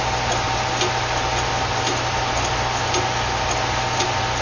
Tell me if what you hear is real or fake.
real